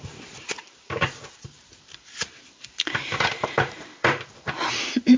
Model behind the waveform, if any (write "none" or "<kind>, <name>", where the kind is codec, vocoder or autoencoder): vocoder, BigVGAN v2